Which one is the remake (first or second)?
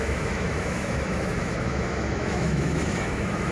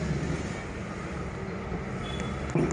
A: first